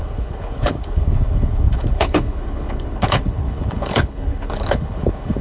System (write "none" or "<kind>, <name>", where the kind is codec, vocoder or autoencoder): codec, HILCodec